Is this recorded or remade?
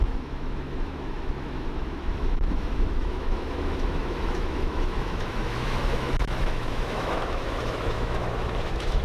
remade